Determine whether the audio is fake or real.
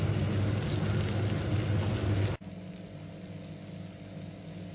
real